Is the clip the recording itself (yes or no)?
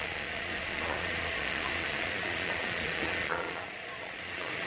no